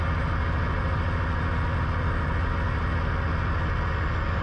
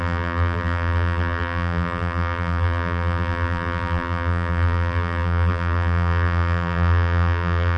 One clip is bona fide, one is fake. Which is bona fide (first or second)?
first